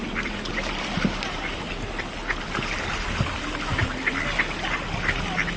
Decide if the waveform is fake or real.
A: real